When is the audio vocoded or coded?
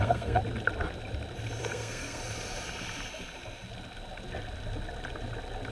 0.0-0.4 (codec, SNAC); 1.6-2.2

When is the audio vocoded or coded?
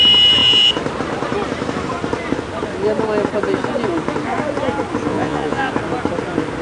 5.1-5.7 (vocoder, Vocos)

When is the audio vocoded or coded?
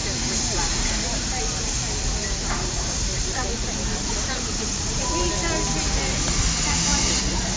0.0-1.4 (vocoder, BigVGAN v2); 2.2-5.1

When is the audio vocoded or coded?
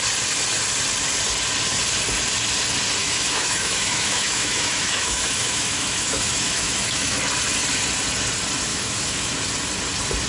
3.0-7.2 (autoencoder, DAC-VAE); 8.7-9.3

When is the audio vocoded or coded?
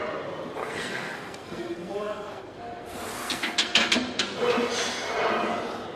0.6-4.2 (codec, SNAC)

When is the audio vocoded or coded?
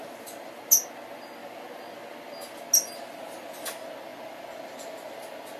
none